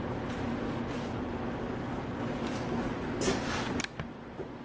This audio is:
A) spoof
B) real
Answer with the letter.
B